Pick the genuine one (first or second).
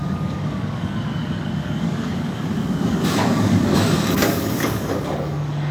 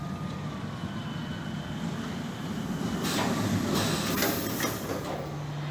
second